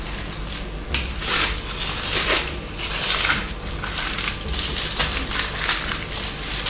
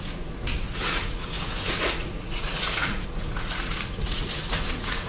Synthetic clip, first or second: second